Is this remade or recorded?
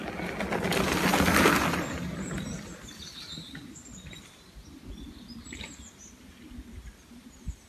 recorded